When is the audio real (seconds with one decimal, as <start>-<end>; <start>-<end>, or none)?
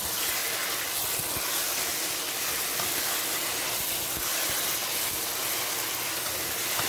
0.0-6.9